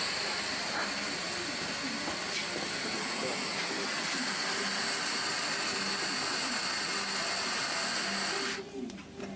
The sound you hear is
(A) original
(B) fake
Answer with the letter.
A